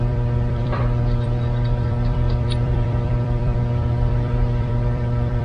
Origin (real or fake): fake